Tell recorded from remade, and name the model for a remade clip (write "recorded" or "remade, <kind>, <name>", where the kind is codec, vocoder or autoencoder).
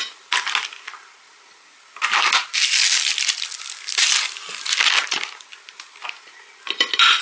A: recorded